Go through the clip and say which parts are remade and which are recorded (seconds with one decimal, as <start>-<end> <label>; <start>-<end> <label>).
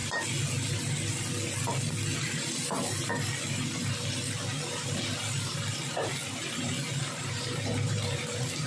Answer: 0.0-8.7 recorded